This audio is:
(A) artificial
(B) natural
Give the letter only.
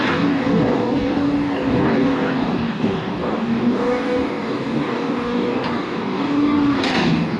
A